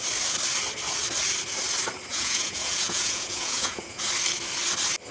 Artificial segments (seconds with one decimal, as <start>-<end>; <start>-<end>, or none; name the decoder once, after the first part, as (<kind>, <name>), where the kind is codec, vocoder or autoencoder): 2.1-4.1 (vocoder, Vocos)